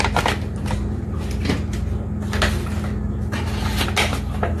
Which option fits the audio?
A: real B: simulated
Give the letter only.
A